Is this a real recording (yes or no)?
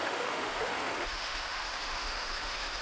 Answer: no